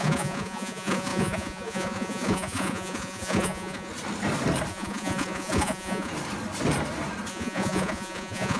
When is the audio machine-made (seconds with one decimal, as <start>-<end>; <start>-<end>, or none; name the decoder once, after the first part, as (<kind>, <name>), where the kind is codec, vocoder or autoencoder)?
0.0-3.9 (vocoder, Vocos); 4.7-6.1; 7.3-8.6